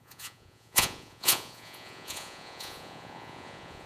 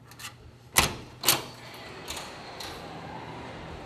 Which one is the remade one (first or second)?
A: first